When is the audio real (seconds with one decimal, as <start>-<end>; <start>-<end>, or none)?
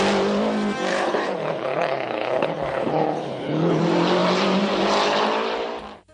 0.0-0.9; 3.8-6.1